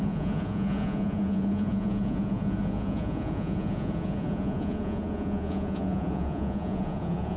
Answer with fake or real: fake